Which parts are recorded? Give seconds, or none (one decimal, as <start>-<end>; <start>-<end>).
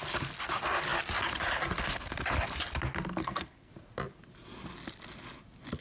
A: 0.0-3.2; 3.7-5.8